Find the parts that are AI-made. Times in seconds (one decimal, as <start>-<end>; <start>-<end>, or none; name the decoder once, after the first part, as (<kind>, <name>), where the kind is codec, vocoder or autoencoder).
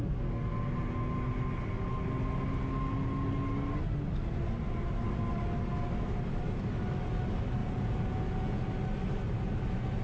7.6-8.6 (vocoder, Vocos)